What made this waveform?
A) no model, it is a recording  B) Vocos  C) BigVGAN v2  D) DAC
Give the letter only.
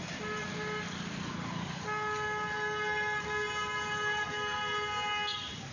A